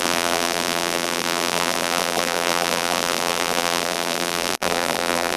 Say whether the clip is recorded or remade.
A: remade